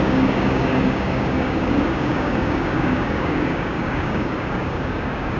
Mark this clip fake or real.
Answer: fake